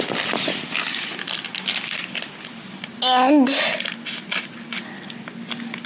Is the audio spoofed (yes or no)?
no